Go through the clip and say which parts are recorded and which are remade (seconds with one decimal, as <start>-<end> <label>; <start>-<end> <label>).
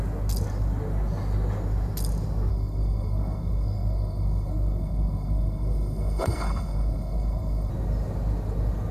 0.0-2.5 recorded; 2.5-7.7 remade; 7.7-8.9 recorded